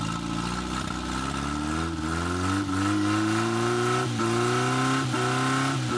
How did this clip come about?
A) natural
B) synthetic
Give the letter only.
A